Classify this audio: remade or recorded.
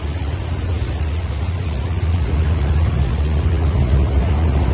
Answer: remade